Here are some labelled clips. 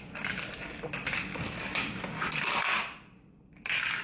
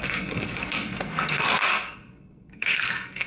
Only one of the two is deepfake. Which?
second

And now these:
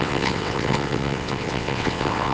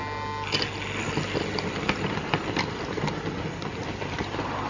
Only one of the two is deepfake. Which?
first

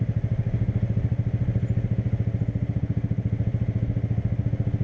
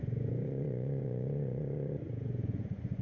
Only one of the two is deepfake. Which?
second